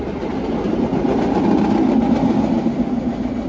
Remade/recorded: recorded